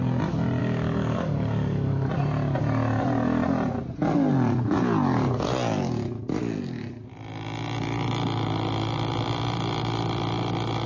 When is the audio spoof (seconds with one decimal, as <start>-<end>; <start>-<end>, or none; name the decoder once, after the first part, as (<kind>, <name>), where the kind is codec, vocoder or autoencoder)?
0.6-2.1 (codec, DAC)